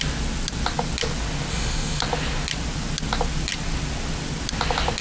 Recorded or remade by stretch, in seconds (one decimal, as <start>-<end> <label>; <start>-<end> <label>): 0.0-1.5 recorded; 1.5-2.0 remade; 2.0-5.0 recorded